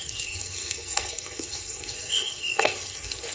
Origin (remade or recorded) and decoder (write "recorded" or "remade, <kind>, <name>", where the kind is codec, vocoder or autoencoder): remade, codec, SNAC